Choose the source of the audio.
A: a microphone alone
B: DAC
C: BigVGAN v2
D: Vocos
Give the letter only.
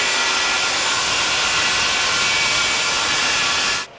A